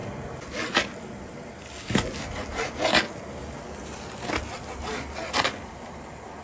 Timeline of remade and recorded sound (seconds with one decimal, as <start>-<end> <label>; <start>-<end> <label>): 0.0-6.4 recorded